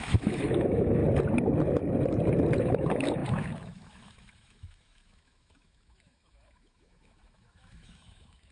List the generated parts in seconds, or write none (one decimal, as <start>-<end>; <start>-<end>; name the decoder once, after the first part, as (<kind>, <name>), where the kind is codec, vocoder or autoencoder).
0.0-1.0 (autoencoder, DAC-VAE); 2.6-8.5